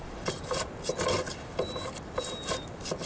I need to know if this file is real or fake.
real